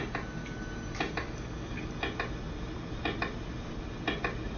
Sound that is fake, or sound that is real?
real